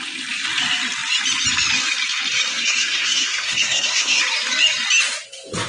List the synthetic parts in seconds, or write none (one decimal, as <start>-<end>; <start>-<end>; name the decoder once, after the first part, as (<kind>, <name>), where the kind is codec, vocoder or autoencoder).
2.5-4.2 (codec, SNAC)